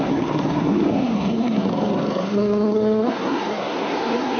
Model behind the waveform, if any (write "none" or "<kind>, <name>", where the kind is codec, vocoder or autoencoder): codec, SNAC